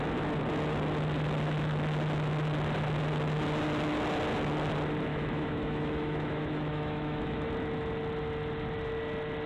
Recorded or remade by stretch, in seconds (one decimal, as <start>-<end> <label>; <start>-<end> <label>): 0.0-5.1 recorded; 5.1-7.5 remade; 7.5-9.5 recorded